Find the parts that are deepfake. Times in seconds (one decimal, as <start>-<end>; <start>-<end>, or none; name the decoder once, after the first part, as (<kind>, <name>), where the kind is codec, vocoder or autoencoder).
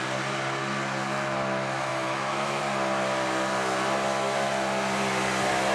1.9-2.6 (autoencoder, DAC-VAE)